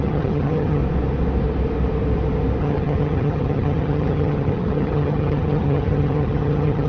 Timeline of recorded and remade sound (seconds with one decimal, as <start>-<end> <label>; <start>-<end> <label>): 0.0-0.8 remade; 0.8-2.6 recorded; 2.6-6.9 remade